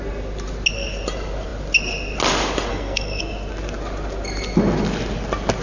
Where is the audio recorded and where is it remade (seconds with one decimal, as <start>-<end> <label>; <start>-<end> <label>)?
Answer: 0.0-2.7 recorded; 2.7-3.2 remade; 3.2-5.6 recorded